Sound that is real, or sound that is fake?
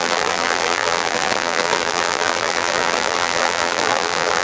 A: fake